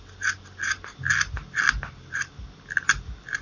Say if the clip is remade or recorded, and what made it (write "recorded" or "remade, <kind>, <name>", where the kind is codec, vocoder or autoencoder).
recorded